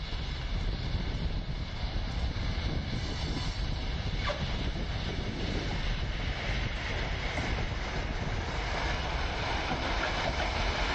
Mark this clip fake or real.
real